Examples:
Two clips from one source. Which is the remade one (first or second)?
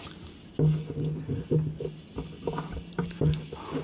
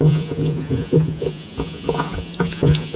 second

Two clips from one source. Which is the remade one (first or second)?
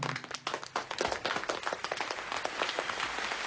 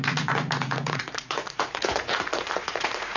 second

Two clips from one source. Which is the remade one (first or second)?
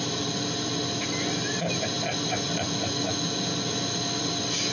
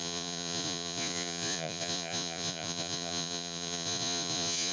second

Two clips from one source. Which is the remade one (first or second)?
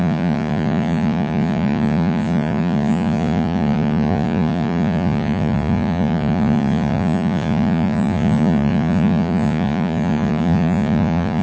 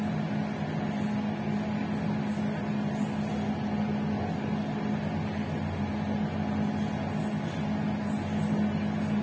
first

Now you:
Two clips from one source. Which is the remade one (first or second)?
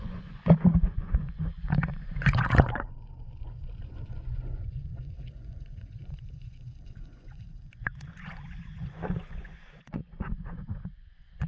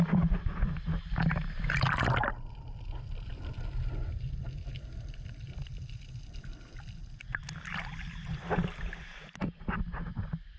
first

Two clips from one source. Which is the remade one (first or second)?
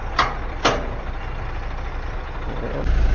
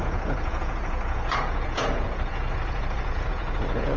second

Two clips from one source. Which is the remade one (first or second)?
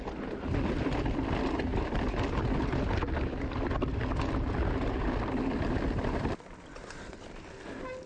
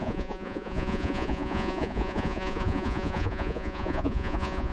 second